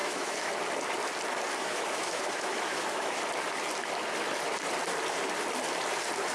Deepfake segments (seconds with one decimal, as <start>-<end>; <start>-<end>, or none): 0.0-0.5; 1.6-3.2